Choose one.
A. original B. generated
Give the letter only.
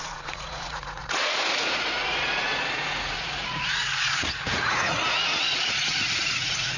B